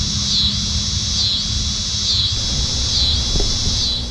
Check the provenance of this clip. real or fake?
real